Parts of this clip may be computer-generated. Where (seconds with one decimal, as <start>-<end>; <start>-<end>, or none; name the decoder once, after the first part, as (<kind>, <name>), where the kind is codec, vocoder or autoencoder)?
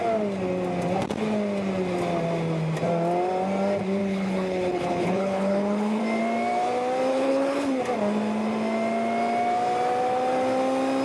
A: 4.0-6.0 (codec, HILCodec); 7.1-7.8